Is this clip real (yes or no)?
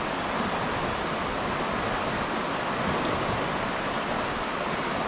yes